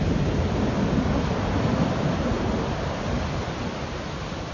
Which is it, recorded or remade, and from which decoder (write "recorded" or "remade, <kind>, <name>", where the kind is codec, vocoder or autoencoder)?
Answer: recorded